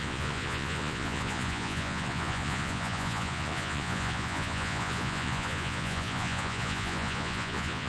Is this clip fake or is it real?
fake